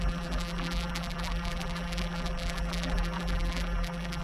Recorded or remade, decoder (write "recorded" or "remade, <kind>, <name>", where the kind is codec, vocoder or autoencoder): remade, vocoder, BigVGAN v2